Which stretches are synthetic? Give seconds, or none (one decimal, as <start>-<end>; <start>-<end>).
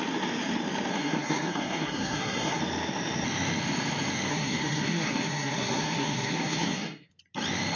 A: 0.9-2.6; 4.3-7.1